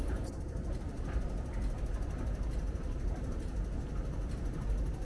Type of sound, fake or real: real